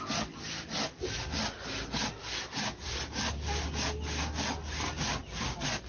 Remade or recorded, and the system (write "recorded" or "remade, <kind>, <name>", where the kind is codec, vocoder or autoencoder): recorded